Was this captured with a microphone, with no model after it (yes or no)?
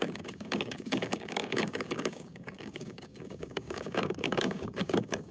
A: no